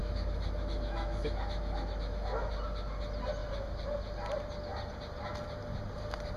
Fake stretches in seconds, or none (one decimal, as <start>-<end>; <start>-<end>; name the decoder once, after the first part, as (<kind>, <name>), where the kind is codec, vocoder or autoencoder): 0.0-2.5 (autoencoder, DAC-VAE)